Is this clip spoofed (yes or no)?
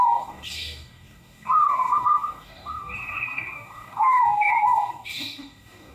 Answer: yes